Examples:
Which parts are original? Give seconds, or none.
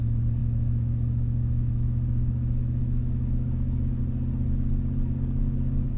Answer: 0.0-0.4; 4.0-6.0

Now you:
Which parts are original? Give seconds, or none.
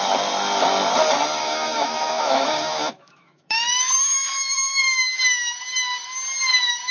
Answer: 0.0-1.4; 5.2-6.9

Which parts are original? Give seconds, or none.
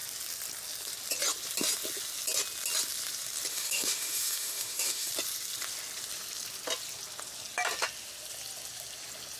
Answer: 0.0-3.5; 5.1-9.4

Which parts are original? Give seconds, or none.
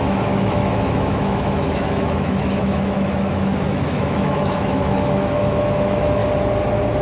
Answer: 6.2-7.0